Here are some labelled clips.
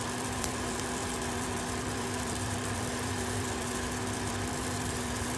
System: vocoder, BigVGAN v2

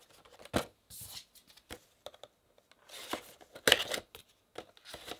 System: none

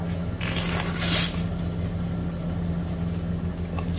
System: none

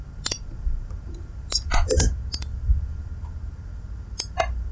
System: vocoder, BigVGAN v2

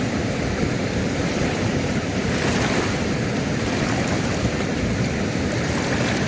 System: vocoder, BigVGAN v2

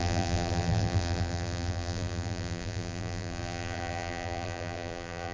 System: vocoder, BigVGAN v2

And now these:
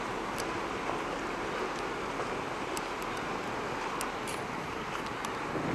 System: none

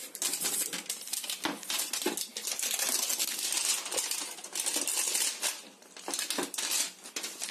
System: none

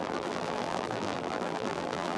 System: vocoder, BigVGAN v2